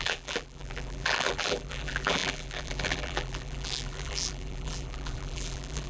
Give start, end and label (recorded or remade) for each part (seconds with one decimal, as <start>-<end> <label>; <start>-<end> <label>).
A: 0.0-5.9 remade